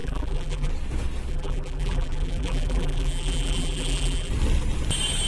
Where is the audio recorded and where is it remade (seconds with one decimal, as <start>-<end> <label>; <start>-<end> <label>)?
0.0-0.7 remade; 0.7-1.3 recorded; 1.3-4.3 remade; 4.3-5.3 recorded